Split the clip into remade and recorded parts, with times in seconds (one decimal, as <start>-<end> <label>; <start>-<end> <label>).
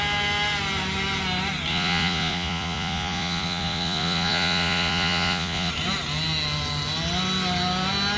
0.0-1.7 recorded; 1.7-5.7 remade; 5.7-8.2 recorded